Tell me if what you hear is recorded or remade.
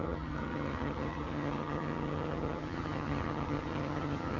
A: remade